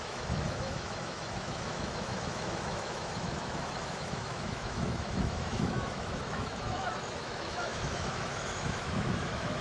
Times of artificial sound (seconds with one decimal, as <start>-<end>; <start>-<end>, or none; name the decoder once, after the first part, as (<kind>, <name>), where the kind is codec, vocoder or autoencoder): 0.0-9.6 (autoencoder, DAC-VAE)